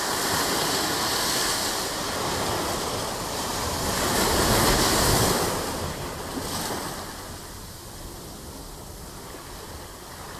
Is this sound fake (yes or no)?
no